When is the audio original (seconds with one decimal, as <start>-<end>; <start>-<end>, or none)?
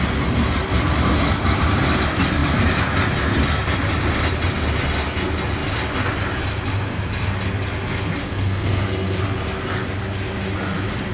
0.0-8.2; 9.2-11.1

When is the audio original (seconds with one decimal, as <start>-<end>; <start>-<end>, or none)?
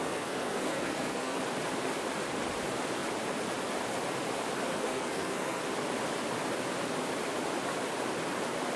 1.4-4.7; 5.6-8.8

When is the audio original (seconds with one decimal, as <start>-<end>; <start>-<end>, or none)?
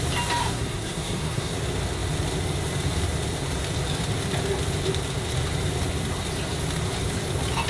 0.0-0.4; 1.5-7.7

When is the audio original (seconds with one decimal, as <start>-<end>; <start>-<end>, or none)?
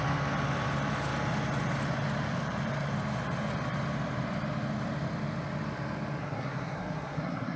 0.0-6.2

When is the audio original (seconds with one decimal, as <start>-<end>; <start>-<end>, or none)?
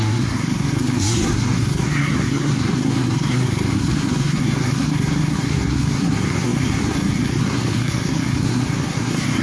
none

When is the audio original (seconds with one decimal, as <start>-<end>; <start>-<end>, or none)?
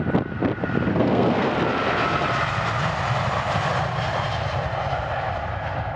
0.0-0.9; 1.5-6.0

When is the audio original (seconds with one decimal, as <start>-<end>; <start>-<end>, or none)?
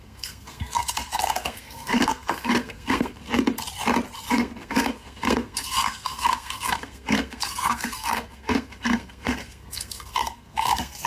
3.2-4.3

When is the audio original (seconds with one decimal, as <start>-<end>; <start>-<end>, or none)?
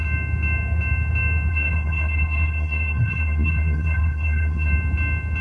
0.0-1.5; 4.7-5.4